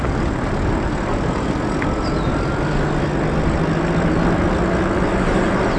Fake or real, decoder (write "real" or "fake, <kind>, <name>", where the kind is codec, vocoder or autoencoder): real